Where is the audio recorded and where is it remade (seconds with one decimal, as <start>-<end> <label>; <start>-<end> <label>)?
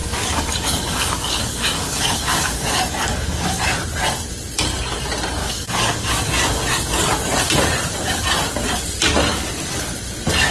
0.0-3.6 remade; 3.6-5.4 recorded; 5.4-6.1 remade; 6.1-10.5 recorded